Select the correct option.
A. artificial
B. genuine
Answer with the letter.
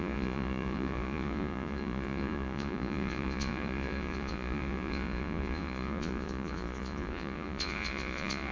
A